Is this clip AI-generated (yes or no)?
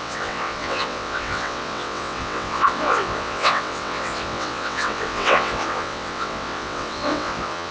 yes